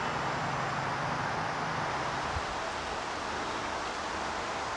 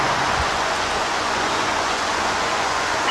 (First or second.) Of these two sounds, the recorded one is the first